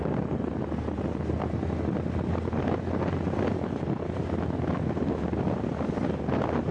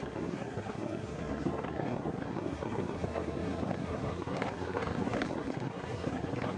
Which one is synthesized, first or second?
second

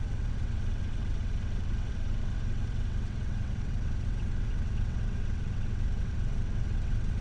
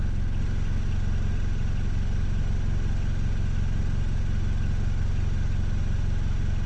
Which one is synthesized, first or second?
first